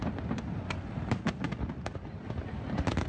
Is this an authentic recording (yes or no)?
yes